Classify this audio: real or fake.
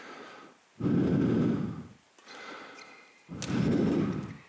real